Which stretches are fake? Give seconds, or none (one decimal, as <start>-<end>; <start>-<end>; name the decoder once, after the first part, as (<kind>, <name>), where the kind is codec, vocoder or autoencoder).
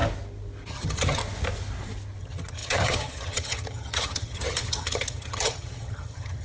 0.7-1.2 (vocoder, HiFi-GAN); 2.2-6.4